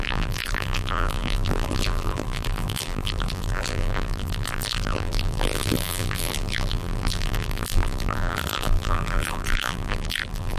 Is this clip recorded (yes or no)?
no